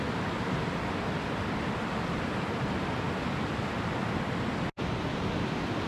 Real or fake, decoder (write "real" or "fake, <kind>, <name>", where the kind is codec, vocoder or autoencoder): real